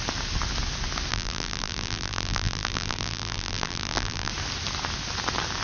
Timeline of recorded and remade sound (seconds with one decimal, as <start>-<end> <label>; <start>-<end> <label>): 0.0-1.1 recorded; 1.1-4.3 remade; 4.3-5.6 recorded